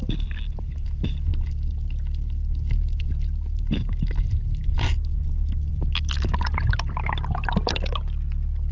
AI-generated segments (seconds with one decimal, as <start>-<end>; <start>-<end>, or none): none